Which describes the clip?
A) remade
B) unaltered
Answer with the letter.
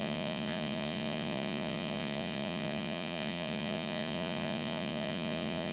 A